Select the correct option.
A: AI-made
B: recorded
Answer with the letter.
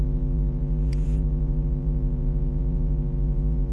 A